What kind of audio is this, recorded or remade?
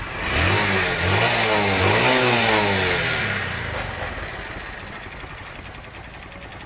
recorded